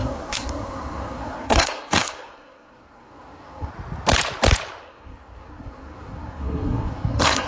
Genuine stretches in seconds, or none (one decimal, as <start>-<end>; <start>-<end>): 3.7-4.8